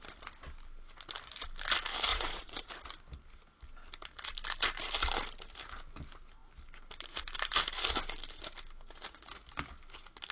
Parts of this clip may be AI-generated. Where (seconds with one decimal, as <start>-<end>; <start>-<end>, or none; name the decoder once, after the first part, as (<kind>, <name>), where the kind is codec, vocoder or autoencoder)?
2.1-2.7 (vocoder, Vocos)